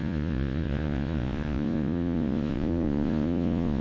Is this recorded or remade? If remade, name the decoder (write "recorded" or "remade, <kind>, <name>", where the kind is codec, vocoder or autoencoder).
remade, vocoder, Vocos